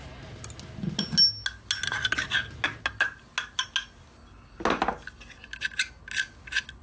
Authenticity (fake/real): real